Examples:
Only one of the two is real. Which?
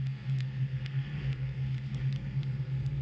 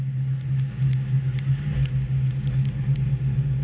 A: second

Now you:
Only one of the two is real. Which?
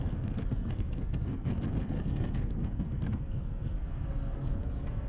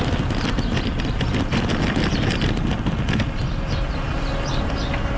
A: second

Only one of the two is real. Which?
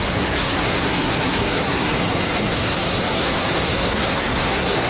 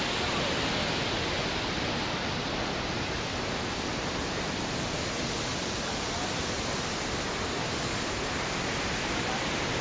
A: second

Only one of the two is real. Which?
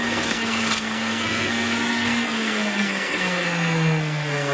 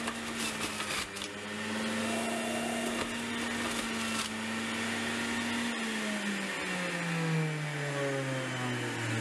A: second